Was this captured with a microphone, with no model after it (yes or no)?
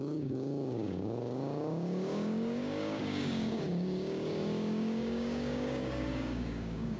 no